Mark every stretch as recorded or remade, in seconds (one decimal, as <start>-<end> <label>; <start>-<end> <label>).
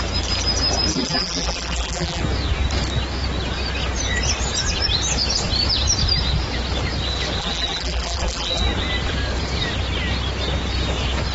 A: 0.0-0.9 recorded; 0.9-2.2 remade; 2.2-7.4 recorded; 7.4-8.6 remade; 8.6-11.3 recorded